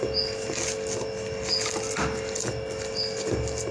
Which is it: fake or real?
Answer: real